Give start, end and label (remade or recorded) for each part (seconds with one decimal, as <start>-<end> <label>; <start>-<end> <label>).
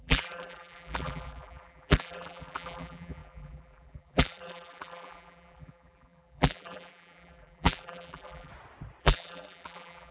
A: 0.0-8.5 remade; 8.5-9.0 recorded; 9.0-10.1 remade